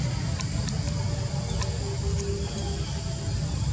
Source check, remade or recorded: recorded